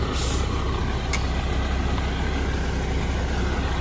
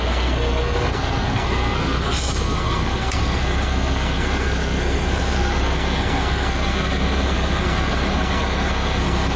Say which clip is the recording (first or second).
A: first